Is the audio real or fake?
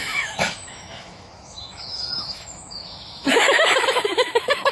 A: fake